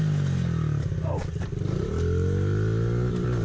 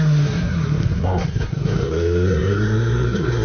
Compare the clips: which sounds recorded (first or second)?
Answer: first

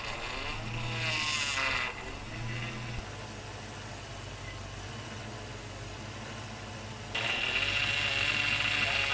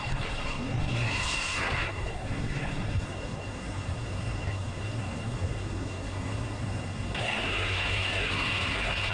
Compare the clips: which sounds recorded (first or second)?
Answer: first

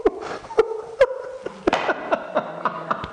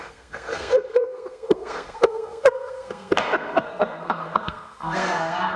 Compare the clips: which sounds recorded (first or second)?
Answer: first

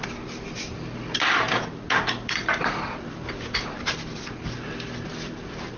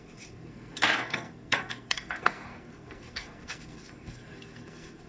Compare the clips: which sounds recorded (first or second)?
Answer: first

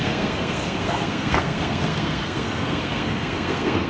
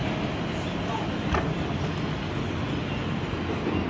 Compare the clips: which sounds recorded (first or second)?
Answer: second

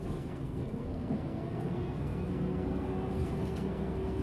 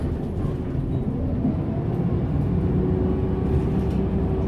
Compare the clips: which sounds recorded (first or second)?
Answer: second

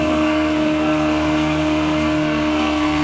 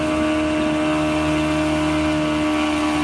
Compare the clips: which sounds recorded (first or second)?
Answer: second